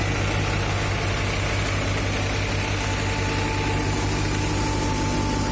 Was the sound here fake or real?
real